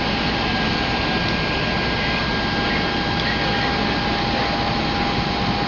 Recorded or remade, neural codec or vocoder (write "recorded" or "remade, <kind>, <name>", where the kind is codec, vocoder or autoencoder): recorded